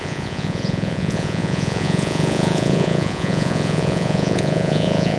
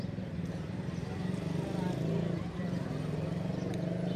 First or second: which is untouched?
second